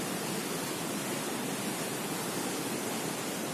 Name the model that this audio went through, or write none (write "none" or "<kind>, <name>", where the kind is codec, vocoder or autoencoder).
none